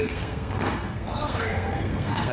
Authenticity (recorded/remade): remade